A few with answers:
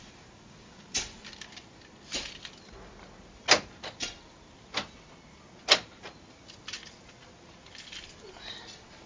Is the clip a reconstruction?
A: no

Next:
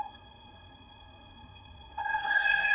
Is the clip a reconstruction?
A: yes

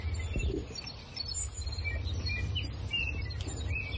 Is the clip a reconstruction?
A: no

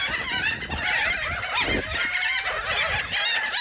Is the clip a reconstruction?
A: no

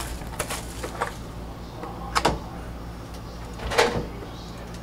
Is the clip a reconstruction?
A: no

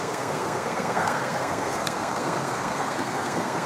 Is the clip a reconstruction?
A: yes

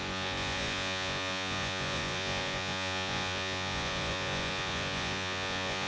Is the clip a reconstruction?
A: yes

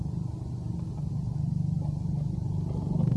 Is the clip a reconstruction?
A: no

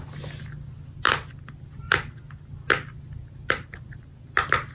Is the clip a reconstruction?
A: no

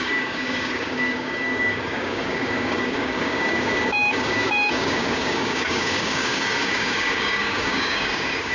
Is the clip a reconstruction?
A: yes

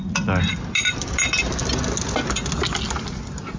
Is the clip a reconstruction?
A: no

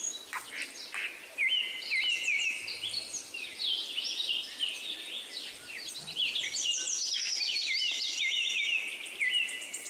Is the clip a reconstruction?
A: no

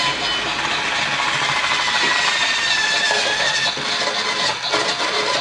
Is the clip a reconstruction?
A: no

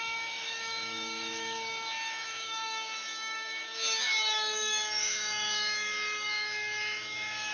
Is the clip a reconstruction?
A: yes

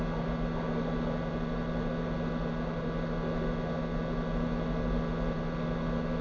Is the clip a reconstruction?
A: no